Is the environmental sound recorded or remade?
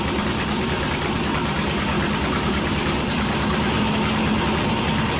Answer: recorded